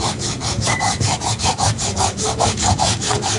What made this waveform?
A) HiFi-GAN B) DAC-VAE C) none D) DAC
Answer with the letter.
D